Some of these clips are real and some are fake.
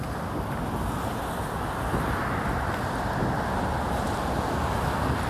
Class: real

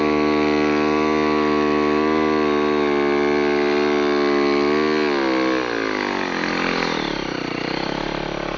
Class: real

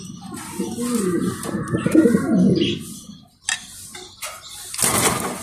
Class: real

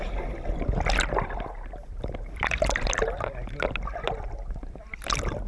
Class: real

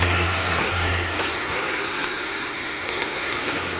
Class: fake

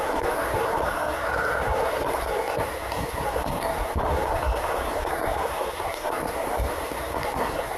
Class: fake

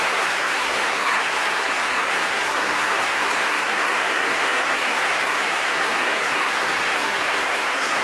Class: fake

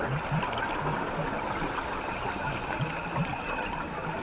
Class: real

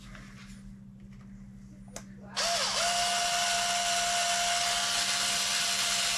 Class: real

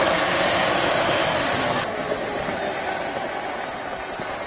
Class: real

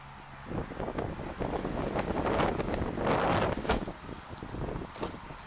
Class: real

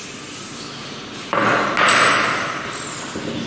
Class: real